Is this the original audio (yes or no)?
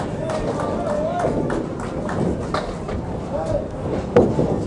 yes